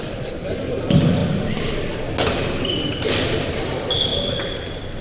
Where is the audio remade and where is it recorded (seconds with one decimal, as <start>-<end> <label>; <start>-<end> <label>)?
0.0-5.0 recorded